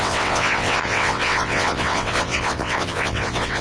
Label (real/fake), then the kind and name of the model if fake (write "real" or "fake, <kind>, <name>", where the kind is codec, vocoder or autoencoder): fake, vocoder, WaveNeXt